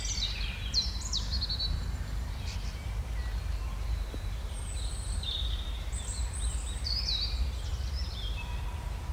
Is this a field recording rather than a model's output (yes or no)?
no